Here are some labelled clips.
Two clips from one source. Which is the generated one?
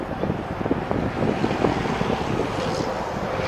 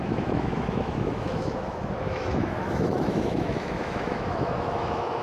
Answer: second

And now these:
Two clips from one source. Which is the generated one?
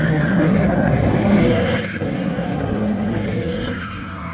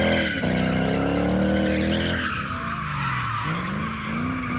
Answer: first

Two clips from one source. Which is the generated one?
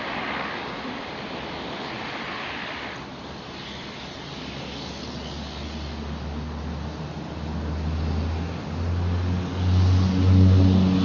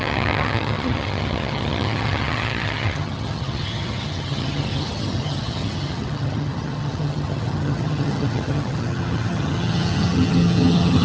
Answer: second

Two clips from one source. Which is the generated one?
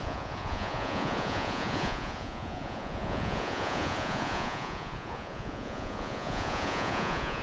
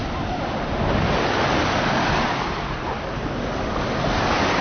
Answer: first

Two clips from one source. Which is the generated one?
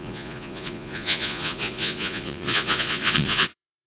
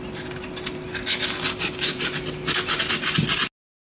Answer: first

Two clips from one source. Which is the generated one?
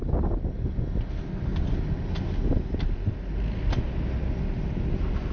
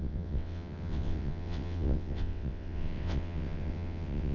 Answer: second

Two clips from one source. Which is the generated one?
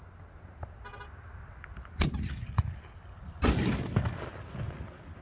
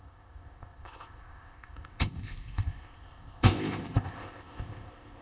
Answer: second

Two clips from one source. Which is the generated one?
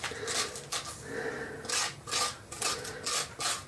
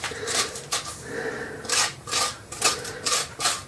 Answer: second